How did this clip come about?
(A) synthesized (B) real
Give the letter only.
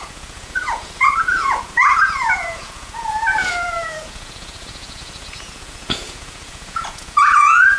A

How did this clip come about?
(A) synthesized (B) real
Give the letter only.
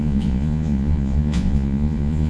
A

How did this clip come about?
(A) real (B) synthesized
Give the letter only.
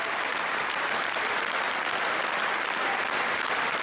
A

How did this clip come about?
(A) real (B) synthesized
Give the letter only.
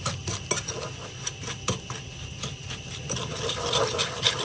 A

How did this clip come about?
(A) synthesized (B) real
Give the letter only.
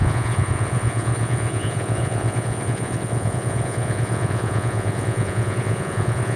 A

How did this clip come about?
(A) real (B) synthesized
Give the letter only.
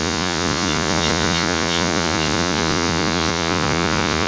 B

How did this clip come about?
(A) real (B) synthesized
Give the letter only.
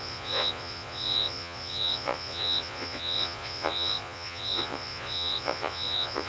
B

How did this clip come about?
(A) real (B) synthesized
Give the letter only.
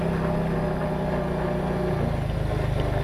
A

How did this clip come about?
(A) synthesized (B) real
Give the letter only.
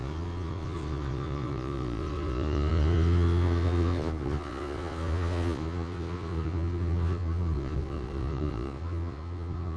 A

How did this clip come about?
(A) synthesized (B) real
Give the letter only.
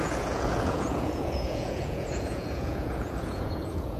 A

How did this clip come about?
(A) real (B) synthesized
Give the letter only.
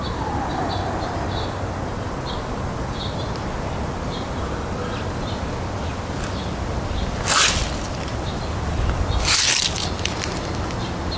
A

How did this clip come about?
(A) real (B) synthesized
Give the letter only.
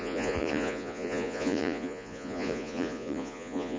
B